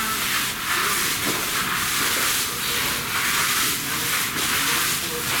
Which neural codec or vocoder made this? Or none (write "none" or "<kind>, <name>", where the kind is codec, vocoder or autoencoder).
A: none